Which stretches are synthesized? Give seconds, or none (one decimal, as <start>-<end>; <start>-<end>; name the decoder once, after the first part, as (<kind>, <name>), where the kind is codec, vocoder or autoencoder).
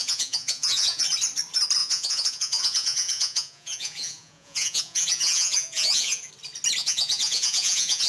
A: 0.0-1.0 (vocoder, Vocos); 1.8-6.3; 6.8-8.1